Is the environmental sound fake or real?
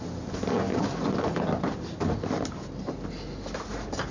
real